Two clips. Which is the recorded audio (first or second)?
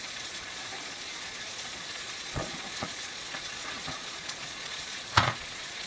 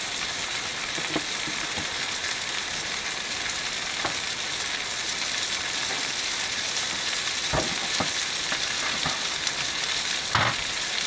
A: second